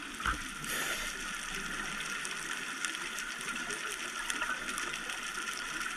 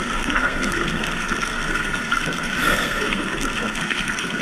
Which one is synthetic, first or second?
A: second